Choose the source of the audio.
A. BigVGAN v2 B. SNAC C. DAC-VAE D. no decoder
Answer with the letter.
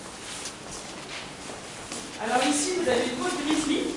D